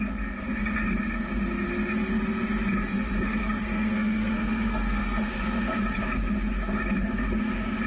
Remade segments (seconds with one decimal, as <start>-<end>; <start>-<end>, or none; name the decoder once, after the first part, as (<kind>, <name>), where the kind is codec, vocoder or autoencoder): 3.4-5.2 (codec, SNAC)